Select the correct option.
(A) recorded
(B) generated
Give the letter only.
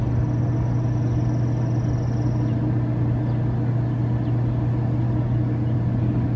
A